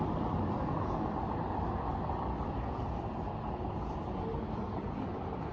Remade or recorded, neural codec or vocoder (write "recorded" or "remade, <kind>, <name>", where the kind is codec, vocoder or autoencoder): recorded